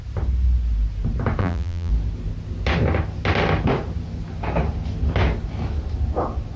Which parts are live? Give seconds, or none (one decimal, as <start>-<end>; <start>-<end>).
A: 0.0-1.4; 1.9-6.6